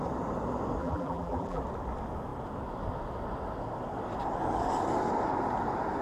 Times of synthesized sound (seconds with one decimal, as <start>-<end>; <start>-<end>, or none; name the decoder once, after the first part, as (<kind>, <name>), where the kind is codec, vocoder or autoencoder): 0.8-1.6 (vocoder, BigVGAN v2)